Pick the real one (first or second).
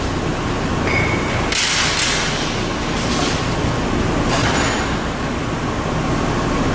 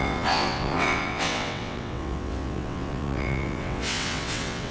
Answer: first